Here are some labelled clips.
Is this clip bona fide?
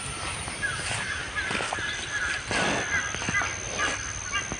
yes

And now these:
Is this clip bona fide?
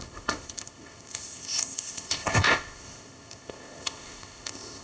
no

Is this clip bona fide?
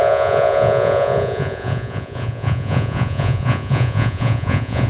no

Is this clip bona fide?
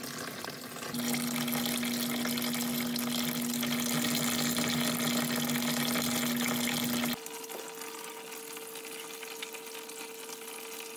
yes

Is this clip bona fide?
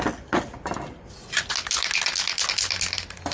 yes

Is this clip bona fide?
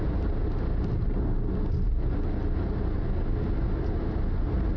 yes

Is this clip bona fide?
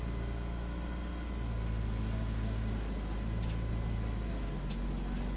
yes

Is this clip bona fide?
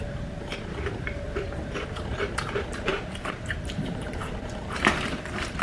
no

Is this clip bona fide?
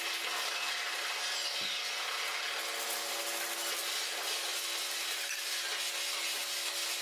yes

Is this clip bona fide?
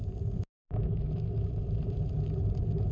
yes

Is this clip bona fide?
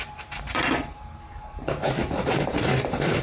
no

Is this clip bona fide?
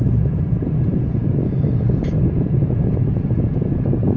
no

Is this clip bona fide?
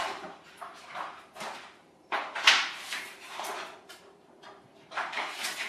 no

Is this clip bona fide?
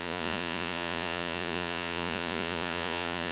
no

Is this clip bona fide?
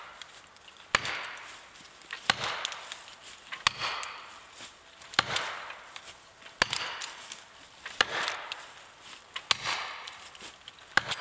yes